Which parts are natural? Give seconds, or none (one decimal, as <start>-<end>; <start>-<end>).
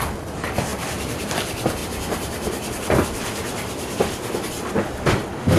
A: 0.0-0.7; 1.3-1.8; 4.5-5.6